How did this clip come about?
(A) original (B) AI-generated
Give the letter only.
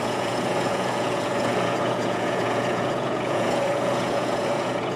B